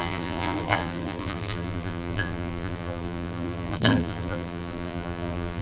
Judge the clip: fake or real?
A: fake